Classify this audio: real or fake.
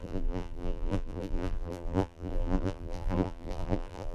fake